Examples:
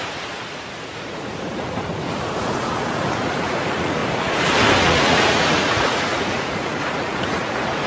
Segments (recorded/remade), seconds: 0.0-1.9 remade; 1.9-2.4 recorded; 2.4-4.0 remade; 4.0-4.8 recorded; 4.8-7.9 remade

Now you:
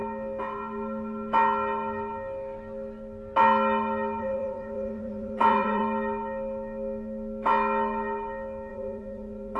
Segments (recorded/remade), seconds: 0.0-4.2 recorded; 4.2-5.8 remade; 5.8-8.7 recorded; 8.7-9.6 remade

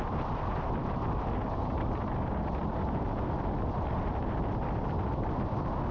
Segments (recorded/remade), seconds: 0.0-5.9 recorded

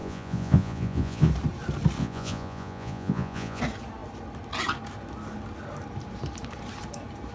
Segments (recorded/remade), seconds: 0.0-1.3 remade; 1.3-2.0 recorded; 2.0-3.6 remade; 3.6-7.3 recorded

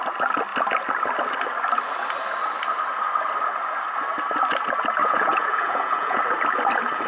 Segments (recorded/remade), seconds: 0.0-5.0 recorded; 5.0-6.2 remade; 6.2-7.1 recorded

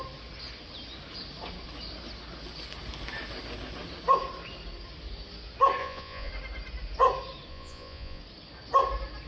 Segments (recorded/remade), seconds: 0.0-5.8 recorded; 5.8-6.3 remade; 6.3-7.5 recorded; 7.5-8.2 remade; 8.2-9.3 recorded

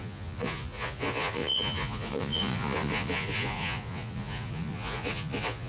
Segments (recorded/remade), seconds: 0.0-5.7 remade

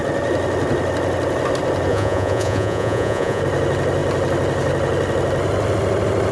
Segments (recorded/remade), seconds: 0.0-1.9 recorded; 1.9-3.4 remade; 3.4-6.3 recorded